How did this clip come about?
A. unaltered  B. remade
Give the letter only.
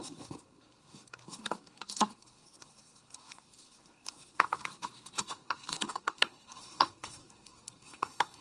B